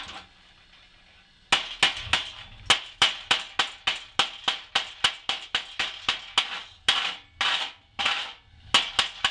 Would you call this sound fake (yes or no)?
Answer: no